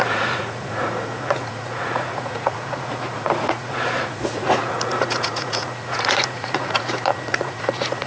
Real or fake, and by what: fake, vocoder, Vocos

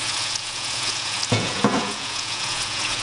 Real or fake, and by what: fake, vocoder, Vocos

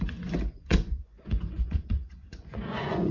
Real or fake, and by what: fake, vocoder, Vocos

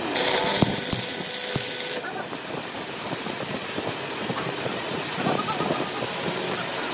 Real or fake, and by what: real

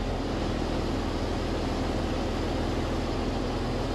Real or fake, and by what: real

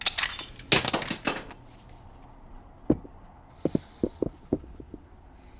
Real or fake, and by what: real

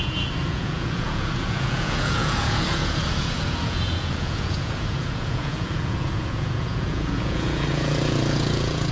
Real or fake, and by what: fake, vocoder, Vocos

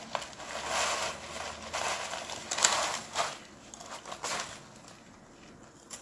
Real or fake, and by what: real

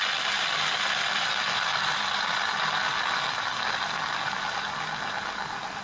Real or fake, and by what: real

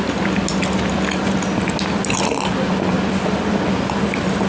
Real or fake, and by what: real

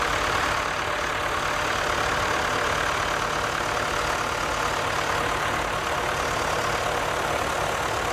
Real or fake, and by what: real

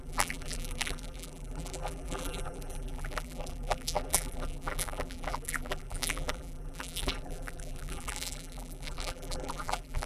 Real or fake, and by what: fake, vocoder, BigVGAN v2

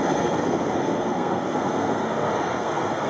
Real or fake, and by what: fake, codec, SNAC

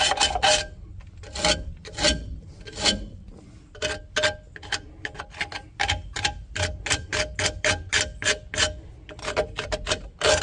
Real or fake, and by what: real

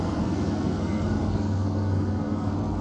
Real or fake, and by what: fake, codec, SNAC